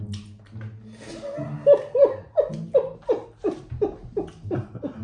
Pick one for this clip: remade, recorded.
recorded